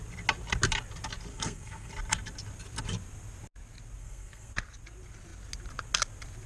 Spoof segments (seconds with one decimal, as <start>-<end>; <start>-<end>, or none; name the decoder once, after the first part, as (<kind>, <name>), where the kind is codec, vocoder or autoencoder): 1.3-1.9 (codec, SNAC); 4.0-4.5